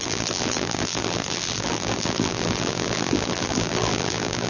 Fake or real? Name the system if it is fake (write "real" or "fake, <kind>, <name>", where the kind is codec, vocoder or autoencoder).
fake, vocoder, BigVGAN v2